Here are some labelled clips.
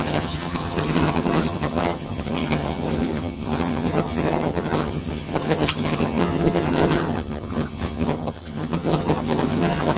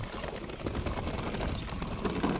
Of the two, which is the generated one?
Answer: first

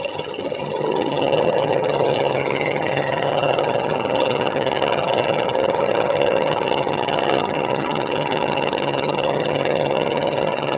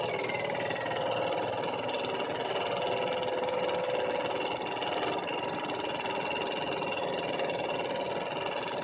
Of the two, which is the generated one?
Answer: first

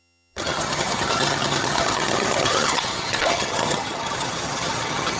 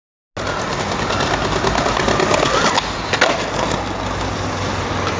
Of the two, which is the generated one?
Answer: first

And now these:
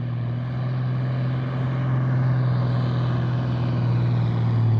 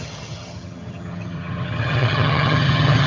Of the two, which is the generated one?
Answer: second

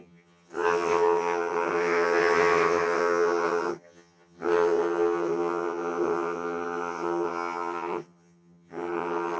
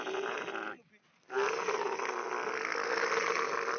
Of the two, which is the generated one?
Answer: first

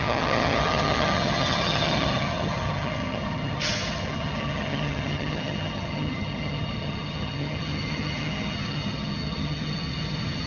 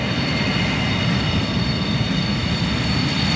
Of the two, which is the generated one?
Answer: first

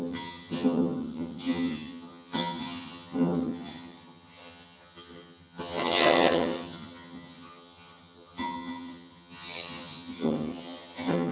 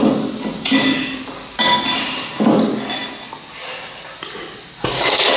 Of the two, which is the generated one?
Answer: first